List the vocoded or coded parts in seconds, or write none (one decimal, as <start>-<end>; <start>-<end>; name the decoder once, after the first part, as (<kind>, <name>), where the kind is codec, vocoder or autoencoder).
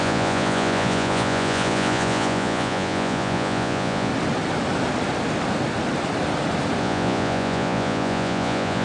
0.0-4.1 (vocoder, Vocos); 6.8-8.8